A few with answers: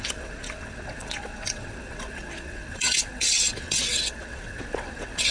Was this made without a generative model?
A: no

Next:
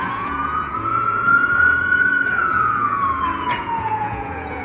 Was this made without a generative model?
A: no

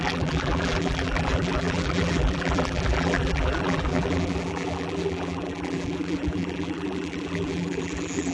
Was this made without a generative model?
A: no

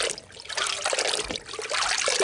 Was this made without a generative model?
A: yes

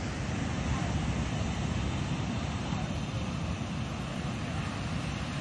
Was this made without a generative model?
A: yes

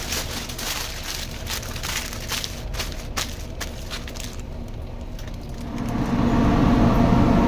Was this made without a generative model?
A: yes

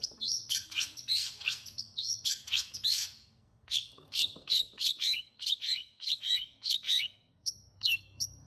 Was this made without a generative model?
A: no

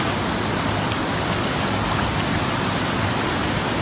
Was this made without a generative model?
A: yes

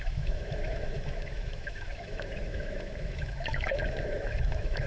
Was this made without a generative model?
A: no